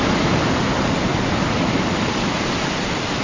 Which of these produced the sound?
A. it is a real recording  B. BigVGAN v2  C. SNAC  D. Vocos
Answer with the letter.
A